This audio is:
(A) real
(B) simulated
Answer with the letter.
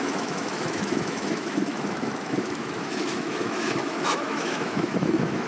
B